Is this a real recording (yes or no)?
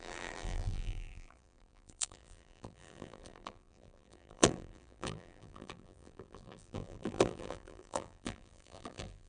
no